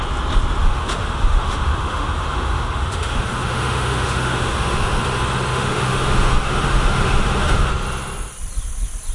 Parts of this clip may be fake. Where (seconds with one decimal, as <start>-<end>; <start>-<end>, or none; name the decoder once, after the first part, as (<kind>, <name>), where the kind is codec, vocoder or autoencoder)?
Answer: 0.6-5.0 (autoencoder, DAC-VAE); 5.5-7.7